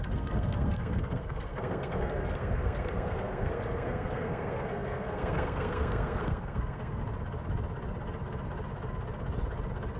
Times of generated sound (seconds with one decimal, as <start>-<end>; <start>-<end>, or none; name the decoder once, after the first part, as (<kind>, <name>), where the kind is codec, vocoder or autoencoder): 0.0-7.0 (codec, SNAC)